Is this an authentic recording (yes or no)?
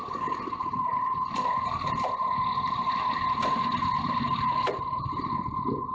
yes